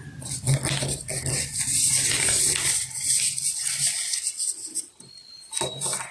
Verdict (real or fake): real